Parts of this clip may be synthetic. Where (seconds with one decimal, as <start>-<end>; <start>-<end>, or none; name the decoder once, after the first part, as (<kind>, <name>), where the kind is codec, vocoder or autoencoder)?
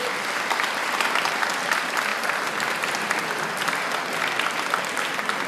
none